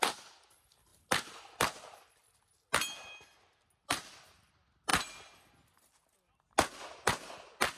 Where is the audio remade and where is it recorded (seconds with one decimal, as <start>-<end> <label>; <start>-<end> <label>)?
0.0-7.8 recorded